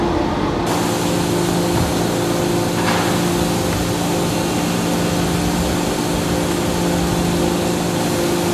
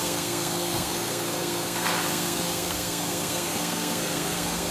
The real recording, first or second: first